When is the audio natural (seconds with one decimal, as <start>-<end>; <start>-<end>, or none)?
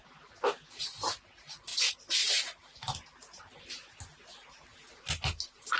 0.0-5.8